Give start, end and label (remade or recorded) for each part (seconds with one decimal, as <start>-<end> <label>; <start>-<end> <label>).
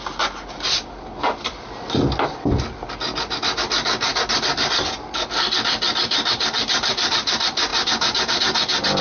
0.0-7.7 recorded; 7.7-8.4 remade; 8.4-9.0 recorded